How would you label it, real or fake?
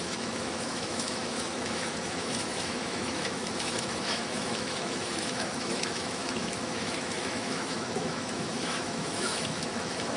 fake